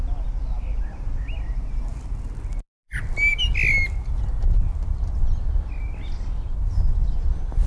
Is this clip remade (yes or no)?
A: no